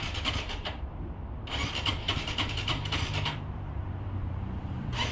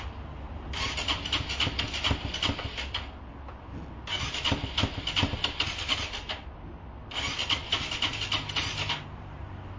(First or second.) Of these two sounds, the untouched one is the second